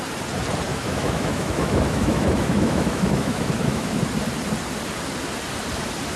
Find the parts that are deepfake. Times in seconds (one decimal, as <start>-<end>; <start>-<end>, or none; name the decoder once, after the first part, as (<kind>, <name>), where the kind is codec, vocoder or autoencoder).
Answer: 0.7-4.0 (autoencoder, DAC-VAE)